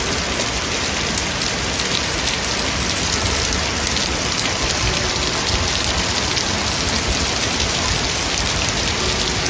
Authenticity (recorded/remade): recorded